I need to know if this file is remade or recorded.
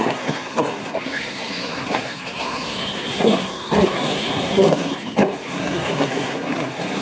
remade